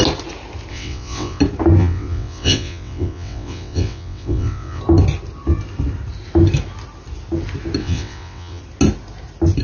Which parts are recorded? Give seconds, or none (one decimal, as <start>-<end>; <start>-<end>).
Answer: 0.0-0.7; 1.4-1.8; 4.8-7.8; 8.6-9.6